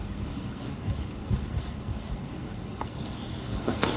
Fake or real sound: fake